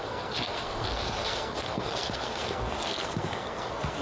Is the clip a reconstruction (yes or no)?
yes